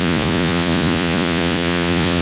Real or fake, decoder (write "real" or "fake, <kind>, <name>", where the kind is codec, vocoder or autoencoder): fake, vocoder, Vocos